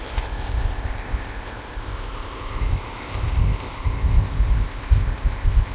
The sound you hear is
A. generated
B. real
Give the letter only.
A